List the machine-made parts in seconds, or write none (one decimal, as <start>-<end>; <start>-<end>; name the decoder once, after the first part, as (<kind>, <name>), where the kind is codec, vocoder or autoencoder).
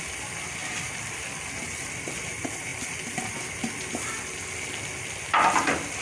0.6-1.4 (vocoder, BigVGAN v2)